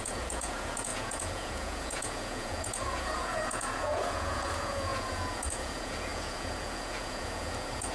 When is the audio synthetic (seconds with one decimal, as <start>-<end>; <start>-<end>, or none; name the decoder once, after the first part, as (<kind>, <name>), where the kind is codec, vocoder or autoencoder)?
0.0-7.9 (vocoder, Vocos)